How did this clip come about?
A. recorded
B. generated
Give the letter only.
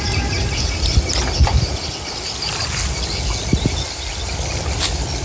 A